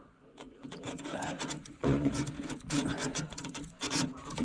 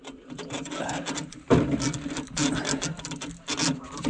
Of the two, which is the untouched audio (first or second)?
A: second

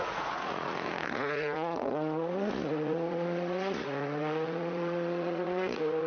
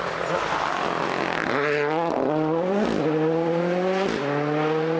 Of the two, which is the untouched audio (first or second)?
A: second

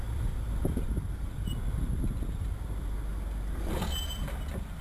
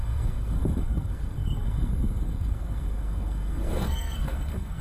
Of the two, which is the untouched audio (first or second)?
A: first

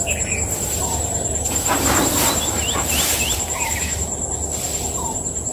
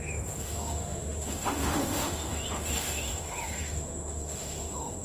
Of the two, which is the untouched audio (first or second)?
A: first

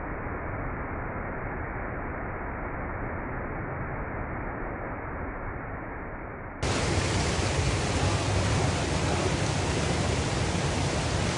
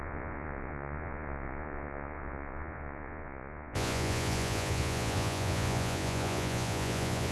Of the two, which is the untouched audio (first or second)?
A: first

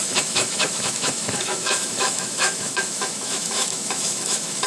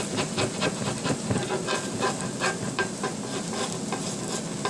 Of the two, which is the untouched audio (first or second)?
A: second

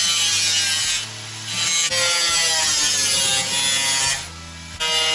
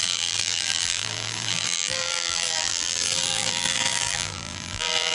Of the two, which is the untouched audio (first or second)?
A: first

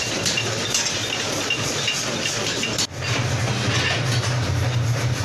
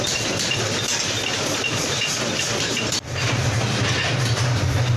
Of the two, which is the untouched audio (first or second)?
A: first